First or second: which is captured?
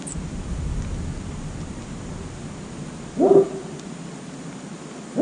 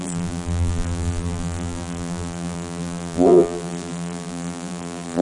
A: first